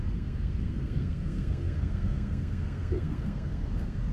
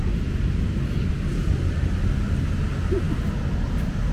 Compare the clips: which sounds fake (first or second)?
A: first